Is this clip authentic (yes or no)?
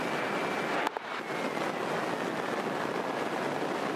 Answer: yes